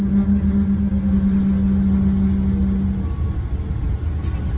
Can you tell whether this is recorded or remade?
recorded